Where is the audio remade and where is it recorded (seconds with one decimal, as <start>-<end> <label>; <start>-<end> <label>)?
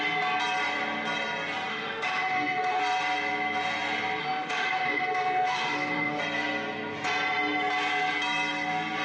0.0-1.7 recorded; 1.7-2.8 remade; 2.8-4.2 recorded; 4.2-6.2 remade; 6.2-9.0 recorded